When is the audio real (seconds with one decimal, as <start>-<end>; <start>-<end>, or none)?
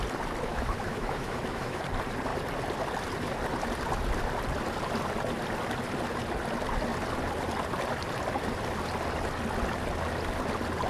0.0-0.5; 1.8-10.9